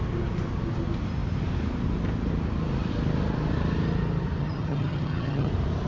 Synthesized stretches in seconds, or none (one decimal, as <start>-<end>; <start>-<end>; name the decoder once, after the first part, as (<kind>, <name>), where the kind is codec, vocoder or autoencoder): 4.4-5.5 (vocoder, HiFi-GAN)